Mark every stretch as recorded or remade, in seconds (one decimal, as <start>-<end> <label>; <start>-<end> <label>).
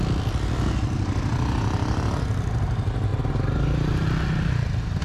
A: 0.0-5.0 recorded